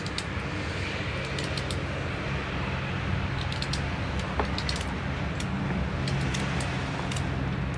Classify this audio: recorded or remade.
recorded